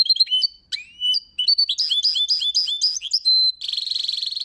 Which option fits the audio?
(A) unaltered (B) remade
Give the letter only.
A